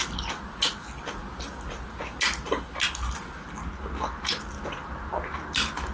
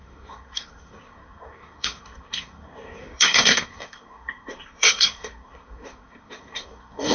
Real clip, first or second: first